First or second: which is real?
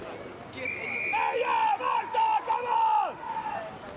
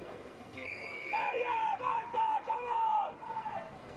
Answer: first